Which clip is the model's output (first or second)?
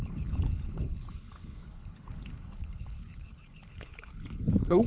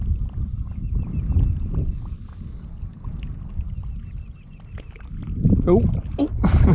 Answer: first